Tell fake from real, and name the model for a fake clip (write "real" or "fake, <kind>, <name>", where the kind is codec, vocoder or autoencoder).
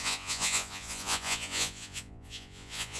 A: fake, vocoder, Vocos